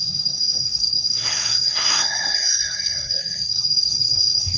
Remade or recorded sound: remade